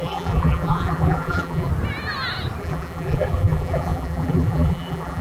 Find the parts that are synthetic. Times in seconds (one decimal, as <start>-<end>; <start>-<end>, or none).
0.0-1.7; 2.6-5.2